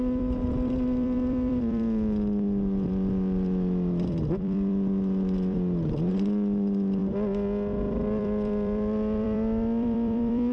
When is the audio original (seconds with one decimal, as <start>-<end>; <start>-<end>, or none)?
7.0-7.8